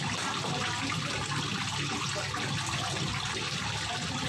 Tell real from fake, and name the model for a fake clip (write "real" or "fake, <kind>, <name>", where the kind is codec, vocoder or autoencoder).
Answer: real